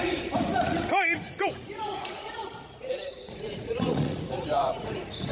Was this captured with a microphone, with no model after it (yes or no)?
no